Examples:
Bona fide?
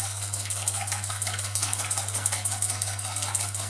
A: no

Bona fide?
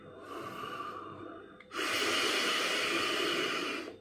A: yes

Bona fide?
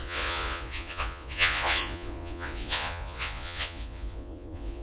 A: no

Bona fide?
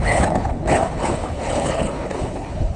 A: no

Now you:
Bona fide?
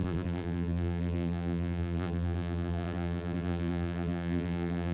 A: no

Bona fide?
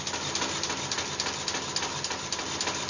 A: yes